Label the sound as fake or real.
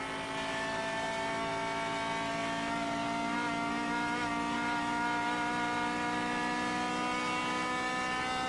real